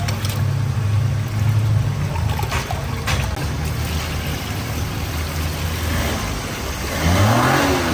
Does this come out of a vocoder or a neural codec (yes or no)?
no